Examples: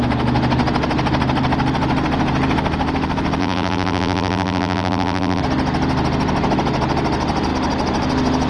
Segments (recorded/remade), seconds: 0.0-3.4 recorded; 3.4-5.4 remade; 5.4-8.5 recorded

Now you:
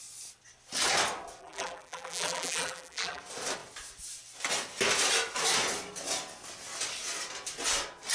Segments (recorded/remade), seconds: 0.0-1.4 recorded; 1.4-3.2 remade; 3.2-8.1 recorded

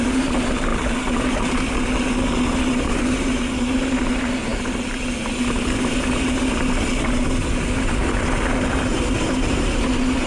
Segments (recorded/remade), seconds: 0.0-8.9 recorded; 8.9-9.8 remade; 9.8-10.3 recorded

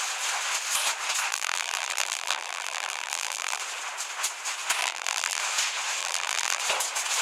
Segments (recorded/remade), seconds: 0.0-1.3 recorded; 1.3-3.6 remade; 3.6-4.8 recorded; 4.8-5.4 remade; 5.4-6.0 recorded; 6.0-6.6 remade; 6.6-7.2 recorded

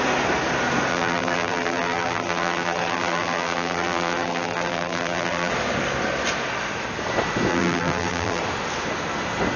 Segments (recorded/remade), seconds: 0.0-0.9 recorded; 0.9-5.5 remade; 5.5-7.5 recorded; 7.5-8.4 remade; 8.4-9.6 recorded